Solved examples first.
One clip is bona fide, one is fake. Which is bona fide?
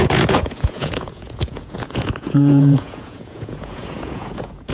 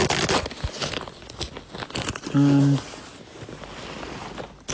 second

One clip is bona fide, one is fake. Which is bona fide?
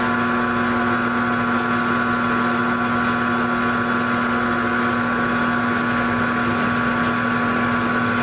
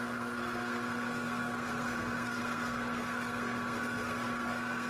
first